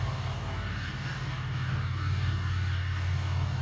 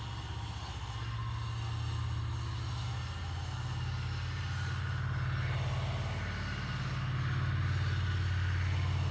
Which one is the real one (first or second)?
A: second